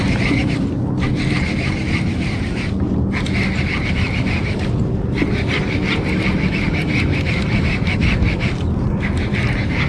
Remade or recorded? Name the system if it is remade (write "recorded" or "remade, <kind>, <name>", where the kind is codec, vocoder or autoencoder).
recorded